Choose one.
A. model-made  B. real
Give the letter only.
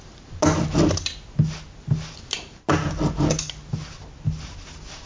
B